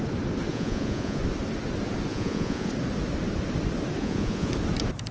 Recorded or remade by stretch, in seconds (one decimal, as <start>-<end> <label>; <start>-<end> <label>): 0.0-0.5 recorded; 0.5-1.2 remade; 1.2-2.1 recorded; 2.1-2.7 remade; 2.7-4.0 recorded; 4.0-4.5 remade; 4.5-5.1 recorded